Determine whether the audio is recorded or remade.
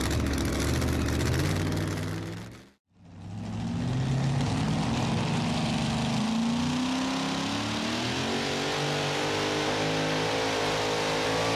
recorded